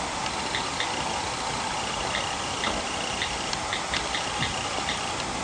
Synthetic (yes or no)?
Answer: no